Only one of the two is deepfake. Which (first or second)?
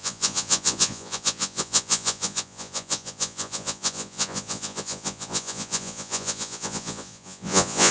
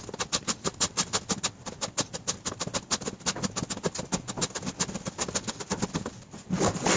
first